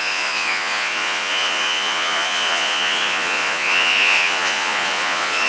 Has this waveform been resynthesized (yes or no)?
yes